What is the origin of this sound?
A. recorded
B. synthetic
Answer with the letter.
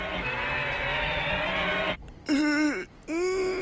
A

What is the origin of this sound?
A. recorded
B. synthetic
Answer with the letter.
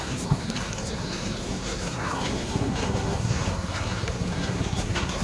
B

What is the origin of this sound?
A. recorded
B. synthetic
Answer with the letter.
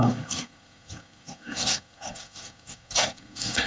B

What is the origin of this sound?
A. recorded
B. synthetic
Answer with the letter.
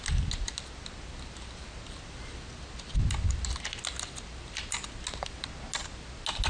A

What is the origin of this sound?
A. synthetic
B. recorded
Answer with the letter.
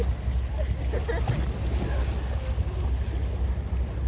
B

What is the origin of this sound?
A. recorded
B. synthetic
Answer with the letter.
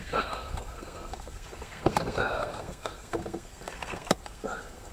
B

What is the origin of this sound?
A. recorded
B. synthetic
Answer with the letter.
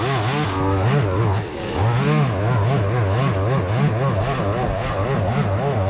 A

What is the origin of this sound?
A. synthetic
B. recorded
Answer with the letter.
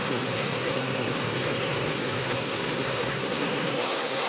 A